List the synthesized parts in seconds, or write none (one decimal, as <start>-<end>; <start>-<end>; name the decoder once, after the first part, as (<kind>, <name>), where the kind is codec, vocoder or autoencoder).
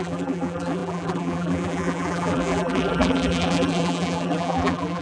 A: 0.0-5.0 (vocoder, BigVGAN v2)